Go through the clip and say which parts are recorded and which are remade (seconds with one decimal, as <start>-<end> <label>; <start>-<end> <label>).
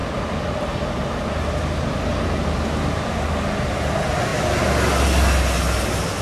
0.0-6.2 recorded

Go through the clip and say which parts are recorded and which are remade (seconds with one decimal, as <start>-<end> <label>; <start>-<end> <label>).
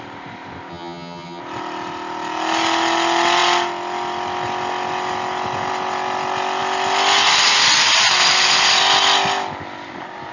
0.0-0.7 recorded; 0.7-1.4 remade; 1.4-10.3 recorded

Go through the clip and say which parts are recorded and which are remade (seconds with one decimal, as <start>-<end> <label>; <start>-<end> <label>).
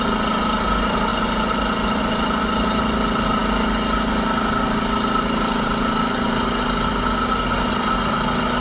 0.0-8.6 recorded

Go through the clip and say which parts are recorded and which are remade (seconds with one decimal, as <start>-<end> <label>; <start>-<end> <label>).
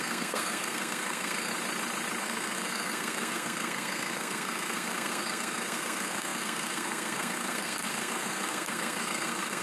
0.0-1.5 remade; 1.5-2.2 recorded; 2.2-9.6 remade